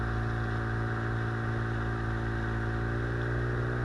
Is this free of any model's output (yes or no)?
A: yes